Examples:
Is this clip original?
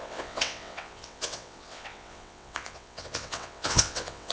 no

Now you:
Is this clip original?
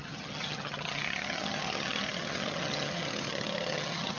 no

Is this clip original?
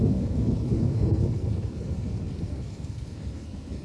no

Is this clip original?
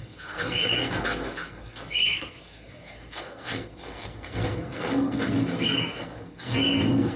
no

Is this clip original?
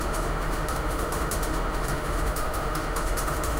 no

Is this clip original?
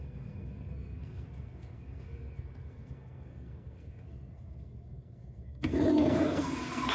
no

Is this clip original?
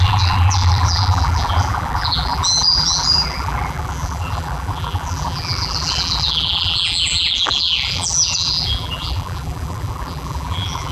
no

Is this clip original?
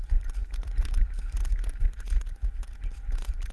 yes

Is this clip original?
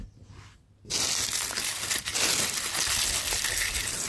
yes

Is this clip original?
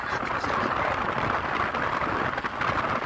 yes